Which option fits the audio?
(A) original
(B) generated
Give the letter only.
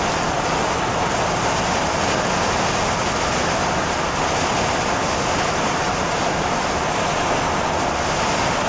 A